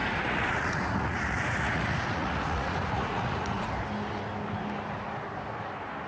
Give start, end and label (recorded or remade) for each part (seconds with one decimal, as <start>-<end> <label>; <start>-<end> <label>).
0.0-3.7 remade; 3.7-6.1 recorded